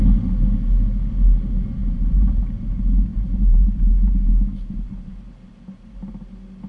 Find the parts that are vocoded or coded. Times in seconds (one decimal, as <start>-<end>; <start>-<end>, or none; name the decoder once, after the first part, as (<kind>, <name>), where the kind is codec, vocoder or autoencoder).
1.8-2.4 (vocoder, BigVGAN v2); 3.1-4.3